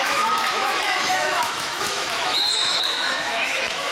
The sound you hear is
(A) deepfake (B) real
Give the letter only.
A